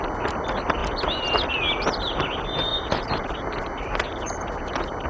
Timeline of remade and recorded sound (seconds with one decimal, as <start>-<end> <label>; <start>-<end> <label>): 0.0-2.7 recorded; 2.7-4.5 remade; 4.5-5.1 recorded